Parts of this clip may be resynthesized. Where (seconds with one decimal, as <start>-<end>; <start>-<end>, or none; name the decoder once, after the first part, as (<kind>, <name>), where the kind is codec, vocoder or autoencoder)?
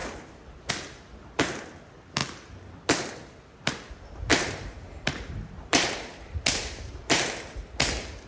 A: 0.0-0.7 (vocoder, BigVGAN v2); 4.3-7.6